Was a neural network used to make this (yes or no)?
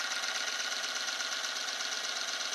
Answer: no